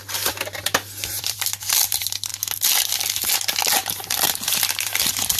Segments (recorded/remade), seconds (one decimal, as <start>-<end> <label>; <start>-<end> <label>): 0.0-1.1 recorded; 1.1-2.3 remade; 2.3-4.1 recorded; 4.1-5.4 remade